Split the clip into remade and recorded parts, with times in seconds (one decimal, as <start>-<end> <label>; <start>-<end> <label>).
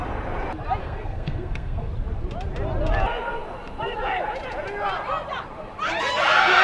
0.0-0.8 recorded; 0.8-1.9 remade; 1.9-6.6 recorded